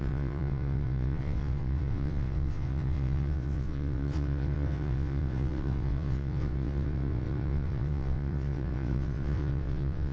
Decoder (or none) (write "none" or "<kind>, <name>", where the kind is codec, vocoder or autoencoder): vocoder, WaveNeXt